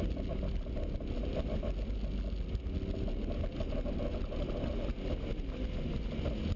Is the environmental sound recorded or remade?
recorded